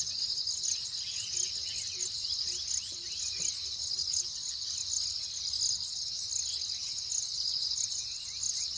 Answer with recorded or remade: recorded